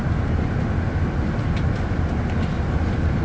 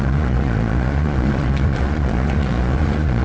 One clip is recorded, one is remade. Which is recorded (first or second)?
first